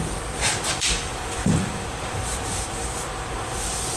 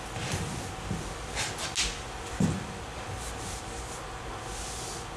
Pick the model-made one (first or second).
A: first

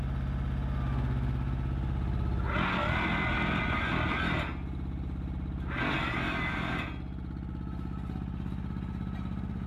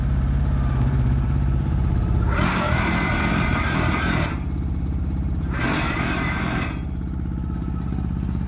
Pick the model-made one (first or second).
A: second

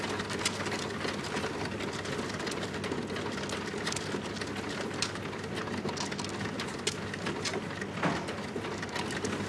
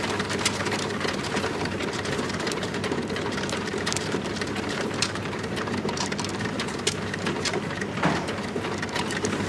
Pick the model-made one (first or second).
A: second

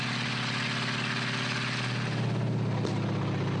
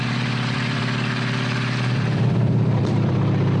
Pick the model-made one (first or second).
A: second